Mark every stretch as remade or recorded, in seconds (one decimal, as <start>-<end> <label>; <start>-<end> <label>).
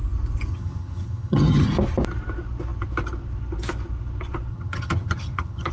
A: 0.0-0.5 recorded; 0.5-1.7 remade; 1.7-4.5 recorded; 4.5-5.7 remade